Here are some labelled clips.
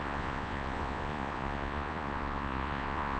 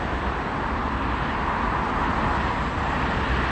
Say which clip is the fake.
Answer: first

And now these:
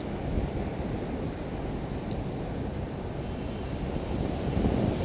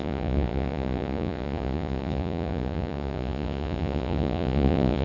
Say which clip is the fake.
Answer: second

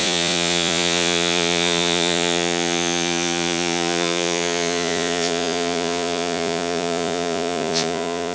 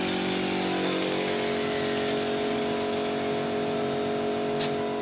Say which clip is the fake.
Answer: first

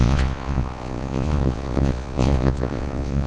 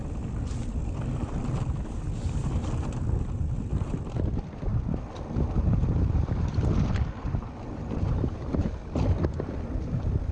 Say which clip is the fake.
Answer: first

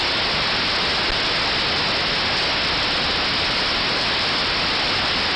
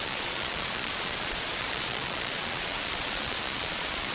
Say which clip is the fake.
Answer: second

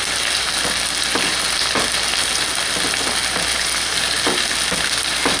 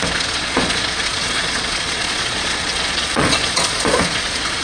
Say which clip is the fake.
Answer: second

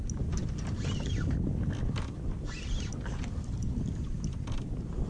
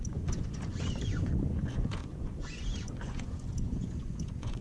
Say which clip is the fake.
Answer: second